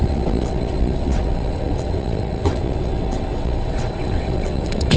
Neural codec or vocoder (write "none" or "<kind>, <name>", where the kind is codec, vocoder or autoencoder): vocoder, WaveNeXt